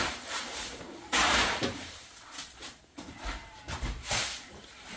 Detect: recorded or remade remade